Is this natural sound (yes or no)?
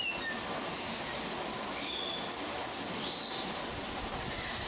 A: yes